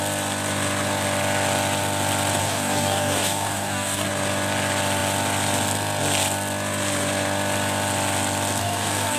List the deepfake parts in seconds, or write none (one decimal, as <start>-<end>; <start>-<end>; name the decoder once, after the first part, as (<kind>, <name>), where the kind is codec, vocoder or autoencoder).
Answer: 2.4-4.1 (codec, DAC); 8.6-9.2

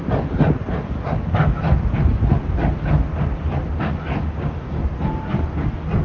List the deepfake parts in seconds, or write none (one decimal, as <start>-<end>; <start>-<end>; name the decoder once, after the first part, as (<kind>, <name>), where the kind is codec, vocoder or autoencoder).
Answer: 4.1-4.9 (codec, DAC)